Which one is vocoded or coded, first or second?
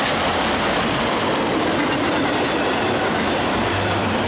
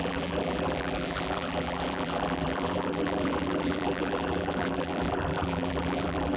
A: second